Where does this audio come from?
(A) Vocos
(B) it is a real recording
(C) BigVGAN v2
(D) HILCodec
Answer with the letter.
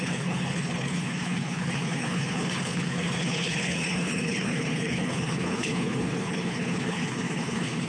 D